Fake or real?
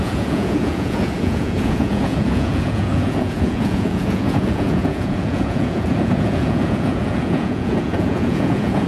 fake